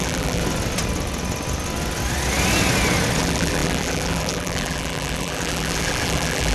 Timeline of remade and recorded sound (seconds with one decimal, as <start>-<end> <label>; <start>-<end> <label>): 0.0-0.4 remade; 0.4-3.2 recorded; 3.2-6.5 remade